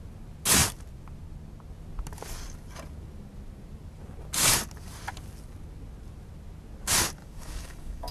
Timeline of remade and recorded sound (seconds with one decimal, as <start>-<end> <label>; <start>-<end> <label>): 0.0-7.2 recorded; 7.2-8.1 remade